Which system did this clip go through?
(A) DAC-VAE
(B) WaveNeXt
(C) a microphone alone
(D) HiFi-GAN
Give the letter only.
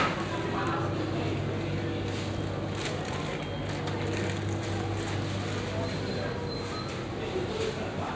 C